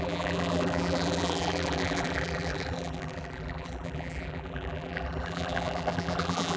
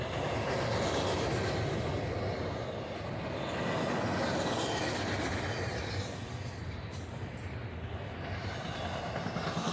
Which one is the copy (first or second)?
first